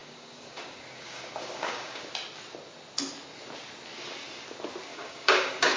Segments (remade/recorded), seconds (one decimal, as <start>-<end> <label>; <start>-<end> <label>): 0.0-2.0 remade; 2.0-4.9 recorded; 4.9-5.8 remade